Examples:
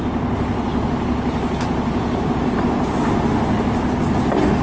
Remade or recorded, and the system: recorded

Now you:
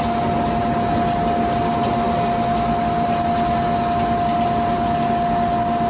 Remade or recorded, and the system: recorded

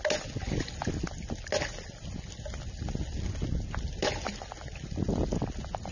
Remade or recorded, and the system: recorded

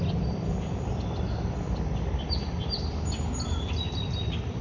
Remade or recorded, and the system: recorded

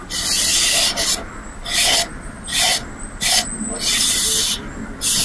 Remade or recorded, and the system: recorded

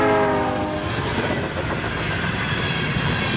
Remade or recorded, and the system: recorded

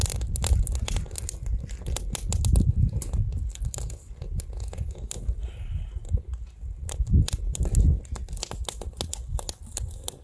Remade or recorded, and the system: recorded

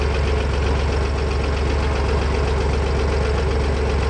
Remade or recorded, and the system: recorded